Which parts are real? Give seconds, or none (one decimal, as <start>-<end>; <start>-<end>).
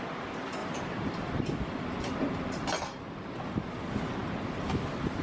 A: 0.0-0.6; 3.7-4.2